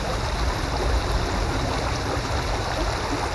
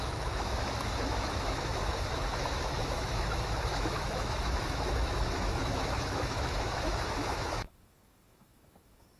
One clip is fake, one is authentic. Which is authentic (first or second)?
first